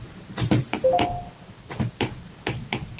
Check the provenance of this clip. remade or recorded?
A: recorded